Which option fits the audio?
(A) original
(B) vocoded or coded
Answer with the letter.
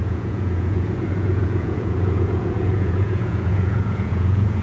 B